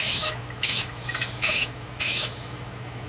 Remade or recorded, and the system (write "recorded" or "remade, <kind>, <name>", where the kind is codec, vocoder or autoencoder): remade, autoencoder, DAC-VAE